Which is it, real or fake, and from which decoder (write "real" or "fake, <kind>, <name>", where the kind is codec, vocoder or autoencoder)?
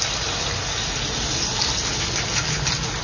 real